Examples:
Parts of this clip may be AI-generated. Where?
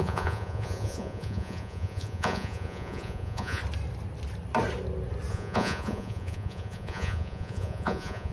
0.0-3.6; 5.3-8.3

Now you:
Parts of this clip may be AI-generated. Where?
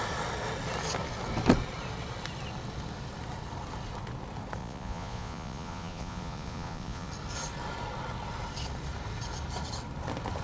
4.6-7.1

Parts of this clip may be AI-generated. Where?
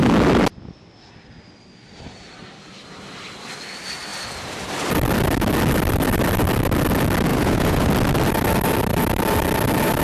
7.3-7.9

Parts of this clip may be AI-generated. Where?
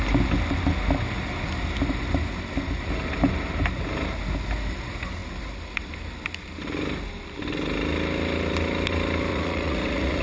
9.3-10.2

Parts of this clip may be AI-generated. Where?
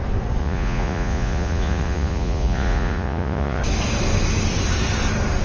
0.4-3.6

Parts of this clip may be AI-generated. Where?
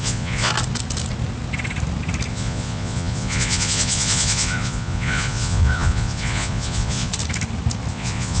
0.0-0.5; 2.3-7.1; 7.9-8.4